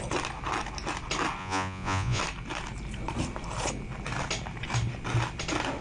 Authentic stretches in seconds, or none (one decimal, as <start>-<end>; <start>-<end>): 0.0-1.4; 2.2-5.8